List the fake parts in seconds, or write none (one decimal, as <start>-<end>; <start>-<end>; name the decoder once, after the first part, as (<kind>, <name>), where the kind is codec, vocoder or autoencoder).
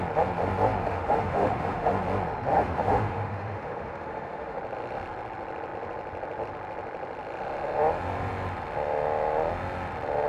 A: 0.8-1.9 (autoencoder, DAC-VAE); 2.5-4.6